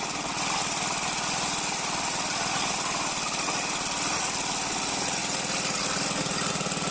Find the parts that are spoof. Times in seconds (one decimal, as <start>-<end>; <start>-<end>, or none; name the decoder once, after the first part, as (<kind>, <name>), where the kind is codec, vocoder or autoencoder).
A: none